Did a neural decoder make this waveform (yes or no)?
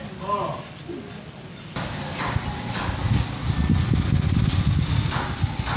no